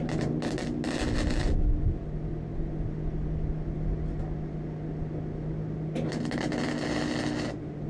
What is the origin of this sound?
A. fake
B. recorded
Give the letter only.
B